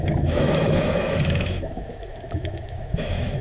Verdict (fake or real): fake